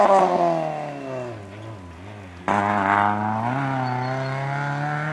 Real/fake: real